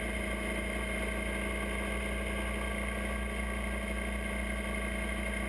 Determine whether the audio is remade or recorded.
recorded